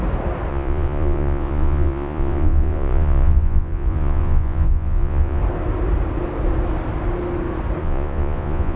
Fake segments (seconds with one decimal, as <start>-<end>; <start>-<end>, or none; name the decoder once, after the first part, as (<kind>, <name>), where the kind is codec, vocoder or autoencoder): 0.5-5.4 (vocoder, Vocos); 7.8-8.8